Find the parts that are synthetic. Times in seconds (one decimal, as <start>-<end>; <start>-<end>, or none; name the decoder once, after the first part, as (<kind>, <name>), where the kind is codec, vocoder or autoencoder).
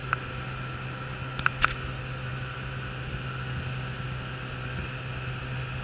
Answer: none